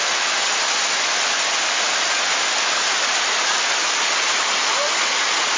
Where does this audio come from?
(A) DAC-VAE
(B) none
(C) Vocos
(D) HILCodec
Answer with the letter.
B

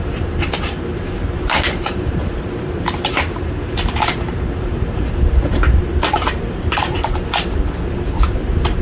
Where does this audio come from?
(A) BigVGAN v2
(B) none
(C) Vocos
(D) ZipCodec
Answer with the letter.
A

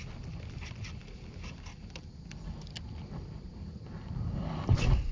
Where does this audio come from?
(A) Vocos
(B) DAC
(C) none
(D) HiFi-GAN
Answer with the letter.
C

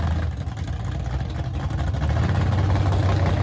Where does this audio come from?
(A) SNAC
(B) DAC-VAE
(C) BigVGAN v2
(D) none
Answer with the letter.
D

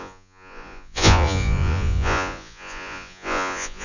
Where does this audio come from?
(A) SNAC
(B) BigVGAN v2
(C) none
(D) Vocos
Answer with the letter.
D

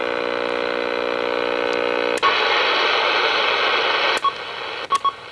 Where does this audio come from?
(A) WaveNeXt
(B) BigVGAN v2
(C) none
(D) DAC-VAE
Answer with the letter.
C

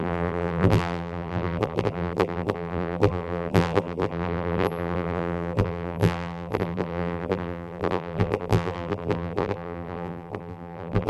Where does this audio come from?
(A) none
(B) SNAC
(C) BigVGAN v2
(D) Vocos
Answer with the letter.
C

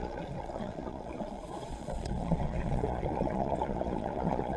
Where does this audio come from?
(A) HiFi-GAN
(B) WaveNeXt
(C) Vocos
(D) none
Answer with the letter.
C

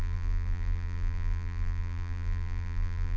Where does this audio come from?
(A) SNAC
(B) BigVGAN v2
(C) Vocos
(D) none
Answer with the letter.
B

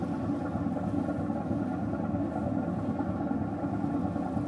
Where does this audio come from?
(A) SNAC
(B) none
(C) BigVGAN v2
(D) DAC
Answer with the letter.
B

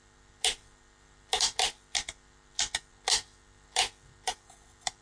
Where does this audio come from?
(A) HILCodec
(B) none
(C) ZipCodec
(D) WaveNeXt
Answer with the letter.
B